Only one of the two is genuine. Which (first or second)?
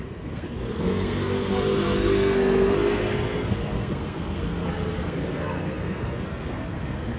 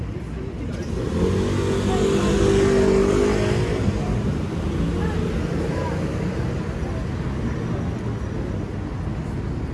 second